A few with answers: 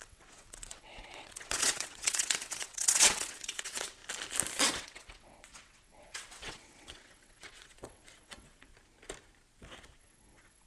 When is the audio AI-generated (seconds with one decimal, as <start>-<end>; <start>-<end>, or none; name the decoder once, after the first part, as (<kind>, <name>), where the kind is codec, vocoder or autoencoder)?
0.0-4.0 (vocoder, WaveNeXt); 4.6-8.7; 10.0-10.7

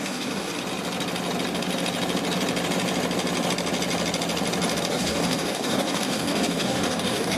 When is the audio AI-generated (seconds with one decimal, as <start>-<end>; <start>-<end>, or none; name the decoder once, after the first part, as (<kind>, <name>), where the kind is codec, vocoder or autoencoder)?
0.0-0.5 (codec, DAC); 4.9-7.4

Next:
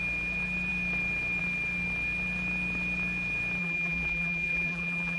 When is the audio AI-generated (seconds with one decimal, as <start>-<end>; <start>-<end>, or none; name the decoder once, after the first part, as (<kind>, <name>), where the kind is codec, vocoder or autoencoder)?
3.6-5.2 (vocoder, BigVGAN v2)

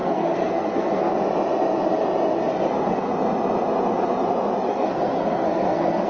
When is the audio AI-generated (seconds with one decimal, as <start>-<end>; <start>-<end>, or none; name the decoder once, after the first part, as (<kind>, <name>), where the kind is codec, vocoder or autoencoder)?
0.0-1.1 (codec, SNAC); 4.7-6.1